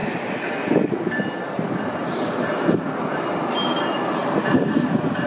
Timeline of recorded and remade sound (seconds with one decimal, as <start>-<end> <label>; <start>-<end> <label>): 0.0-5.3 recorded